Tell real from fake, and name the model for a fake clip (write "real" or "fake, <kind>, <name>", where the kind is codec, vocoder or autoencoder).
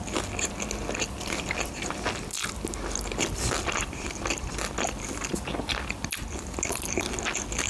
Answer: real